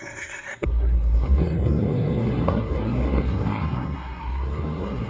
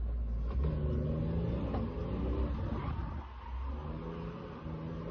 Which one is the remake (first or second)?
first